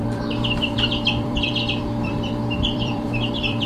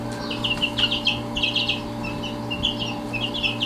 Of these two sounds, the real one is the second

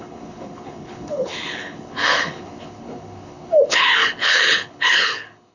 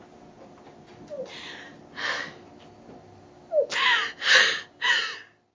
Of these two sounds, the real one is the second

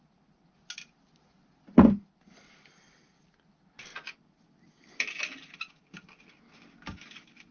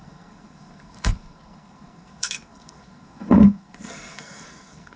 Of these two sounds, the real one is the first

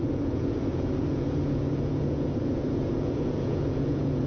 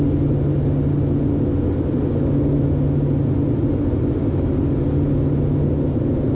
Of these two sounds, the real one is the second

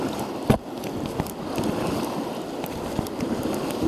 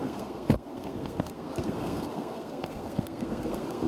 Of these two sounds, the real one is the first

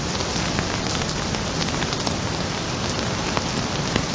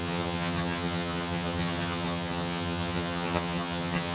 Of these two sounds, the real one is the first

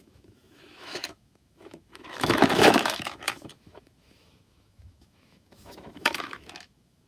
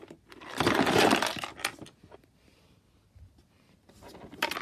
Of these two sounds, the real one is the second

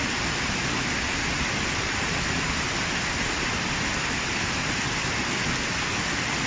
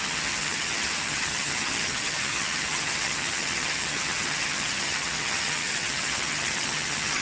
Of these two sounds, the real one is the first